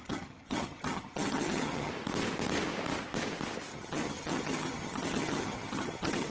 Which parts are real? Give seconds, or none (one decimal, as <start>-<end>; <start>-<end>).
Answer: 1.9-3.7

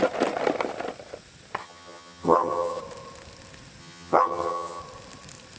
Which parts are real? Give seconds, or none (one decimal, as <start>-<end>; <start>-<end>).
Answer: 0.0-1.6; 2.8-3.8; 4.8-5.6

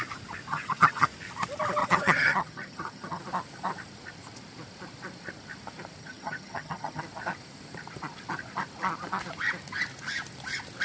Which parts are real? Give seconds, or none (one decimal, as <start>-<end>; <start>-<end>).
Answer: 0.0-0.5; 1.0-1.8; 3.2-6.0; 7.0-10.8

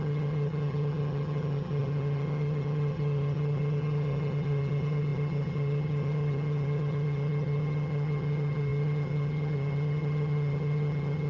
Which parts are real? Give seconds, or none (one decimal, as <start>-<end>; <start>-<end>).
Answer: none

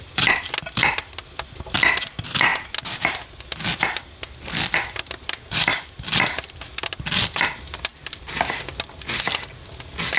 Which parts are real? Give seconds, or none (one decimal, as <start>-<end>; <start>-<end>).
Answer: 0.0-10.2